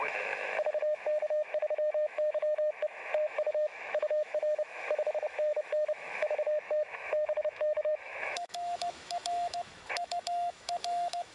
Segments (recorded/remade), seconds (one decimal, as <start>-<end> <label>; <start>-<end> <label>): 0.0-11.3 remade